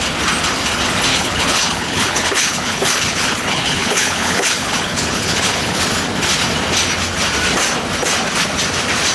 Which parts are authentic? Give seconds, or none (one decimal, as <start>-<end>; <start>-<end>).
0.0-1.1; 5.8-9.1